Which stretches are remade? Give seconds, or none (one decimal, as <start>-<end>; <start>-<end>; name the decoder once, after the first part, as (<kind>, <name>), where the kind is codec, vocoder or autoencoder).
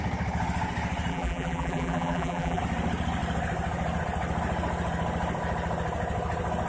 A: 1.1-2.6 (vocoder, BigVGAN v2)